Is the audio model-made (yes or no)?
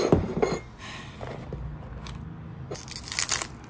no